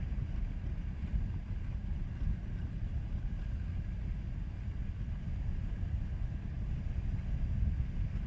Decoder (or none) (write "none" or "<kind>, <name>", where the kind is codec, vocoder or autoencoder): none